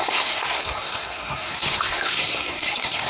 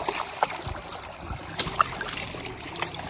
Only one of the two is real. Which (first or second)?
second